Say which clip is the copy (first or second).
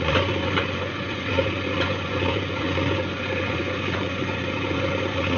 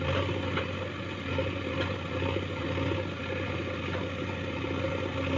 first